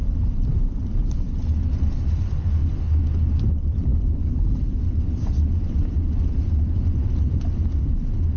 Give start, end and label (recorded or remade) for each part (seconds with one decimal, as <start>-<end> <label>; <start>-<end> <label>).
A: 0.0-2.6 remade; 2.6-3.3 recorded; 3.3-8.4 remade